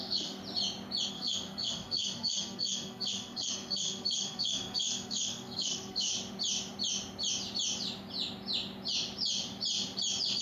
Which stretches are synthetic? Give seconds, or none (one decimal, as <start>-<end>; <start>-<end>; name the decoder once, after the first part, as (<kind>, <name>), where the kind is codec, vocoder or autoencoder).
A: 0.0-0.4 (codec, SNAC); 1.1-6.1

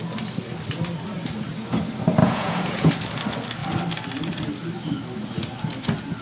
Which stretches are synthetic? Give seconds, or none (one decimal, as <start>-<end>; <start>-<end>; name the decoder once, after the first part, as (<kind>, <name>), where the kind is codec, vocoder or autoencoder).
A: 2.2-2.9 (vocoder, Vocos)

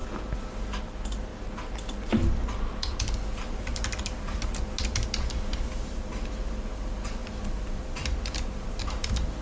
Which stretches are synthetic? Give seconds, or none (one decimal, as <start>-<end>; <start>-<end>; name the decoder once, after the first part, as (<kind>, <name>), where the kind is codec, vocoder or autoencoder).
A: none